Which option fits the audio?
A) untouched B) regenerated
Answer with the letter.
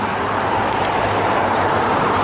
A